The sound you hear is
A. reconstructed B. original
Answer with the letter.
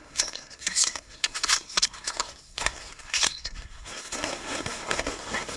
A